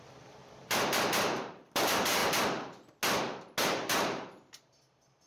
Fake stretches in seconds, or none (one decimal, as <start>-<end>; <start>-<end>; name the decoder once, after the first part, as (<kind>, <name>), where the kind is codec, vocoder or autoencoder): 0.0-2.2 (vocoder, BigVGAN v2); 3.6-5.3